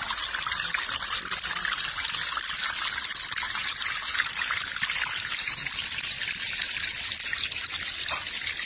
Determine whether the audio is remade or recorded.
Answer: recorded